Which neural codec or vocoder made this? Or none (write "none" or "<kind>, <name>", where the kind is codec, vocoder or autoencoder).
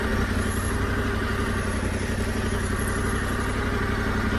none